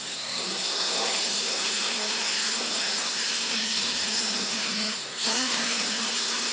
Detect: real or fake fake